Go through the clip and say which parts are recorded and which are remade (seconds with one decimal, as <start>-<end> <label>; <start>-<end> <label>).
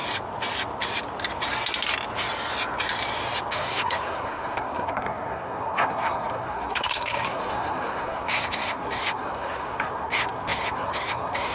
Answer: 0.0-3.5 recorded; 3.5-11.5 remade